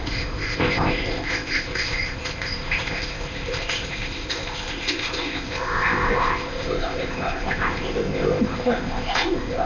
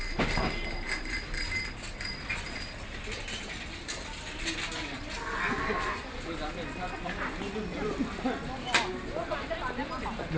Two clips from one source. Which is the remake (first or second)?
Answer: first